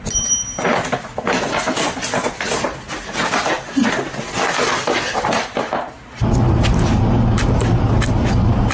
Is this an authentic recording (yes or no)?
yes